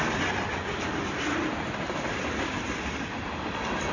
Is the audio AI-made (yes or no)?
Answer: no